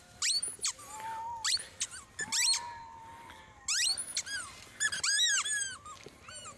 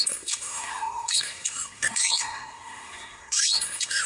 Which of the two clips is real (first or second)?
first